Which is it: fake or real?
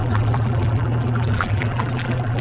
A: fake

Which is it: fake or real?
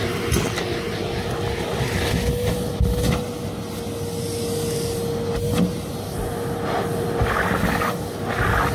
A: real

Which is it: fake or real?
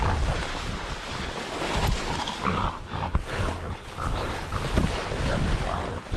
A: real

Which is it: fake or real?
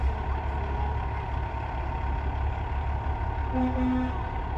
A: real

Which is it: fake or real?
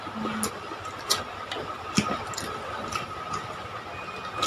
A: real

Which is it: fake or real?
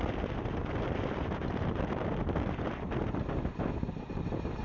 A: fake